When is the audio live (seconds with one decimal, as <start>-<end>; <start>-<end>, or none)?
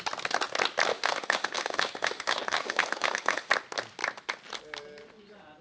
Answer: 0.0-0.9; 3.5-5.6